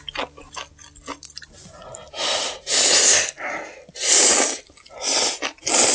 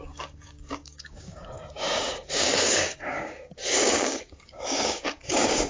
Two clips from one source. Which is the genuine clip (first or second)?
first